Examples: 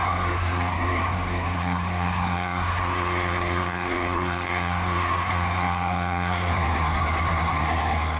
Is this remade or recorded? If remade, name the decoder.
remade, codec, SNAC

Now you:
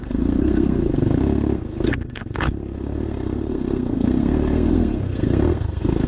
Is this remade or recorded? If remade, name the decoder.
remade, codec, SNAC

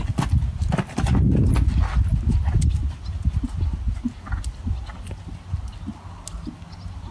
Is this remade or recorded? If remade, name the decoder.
recorded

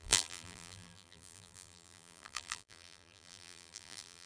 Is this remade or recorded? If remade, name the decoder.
remade, vocoder, BigVGAN v2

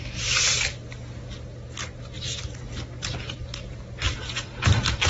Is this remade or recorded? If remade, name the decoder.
recorded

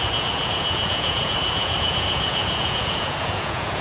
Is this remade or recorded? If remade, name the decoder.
remade, vocoder, Vocos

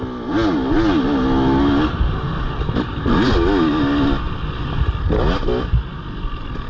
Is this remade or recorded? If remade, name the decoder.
recorded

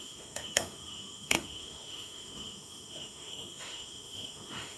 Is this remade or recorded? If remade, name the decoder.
remade, autoencoder, DAC-VAE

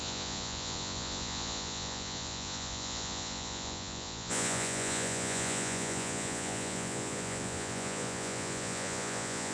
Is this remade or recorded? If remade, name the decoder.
remade, vocoder, Vocos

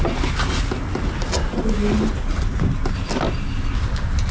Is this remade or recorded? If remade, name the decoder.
recorded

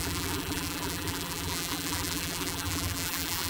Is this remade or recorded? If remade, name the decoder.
remade, vocoder, BigVGAN v2